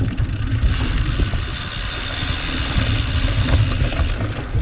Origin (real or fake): real